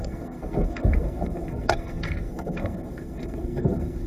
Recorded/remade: remade